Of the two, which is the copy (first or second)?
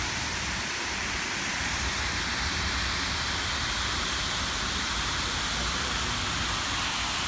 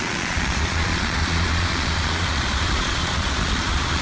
second